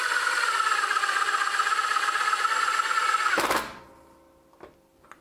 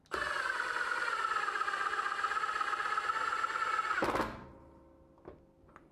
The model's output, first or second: first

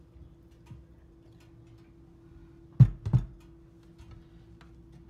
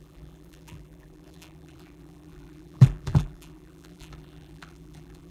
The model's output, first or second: second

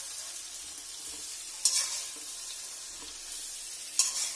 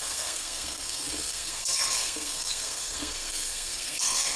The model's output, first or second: second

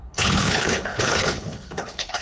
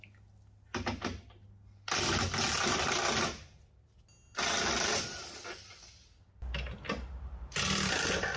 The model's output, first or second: first